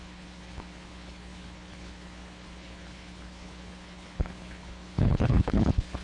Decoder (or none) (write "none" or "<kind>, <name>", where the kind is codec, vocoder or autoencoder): codec, HILCodec